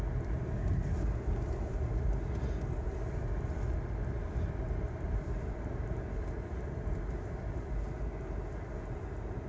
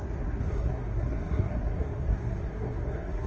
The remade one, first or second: second